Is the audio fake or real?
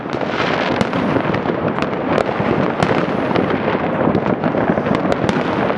real